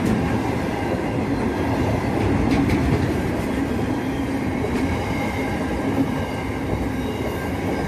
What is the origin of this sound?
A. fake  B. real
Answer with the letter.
B